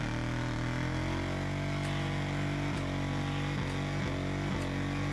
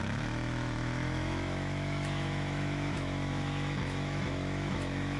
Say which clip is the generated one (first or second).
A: second